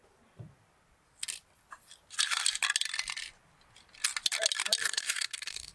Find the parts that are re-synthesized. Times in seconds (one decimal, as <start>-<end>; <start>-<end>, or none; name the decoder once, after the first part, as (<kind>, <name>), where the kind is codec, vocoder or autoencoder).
4.8-5.7 (codec, DAC)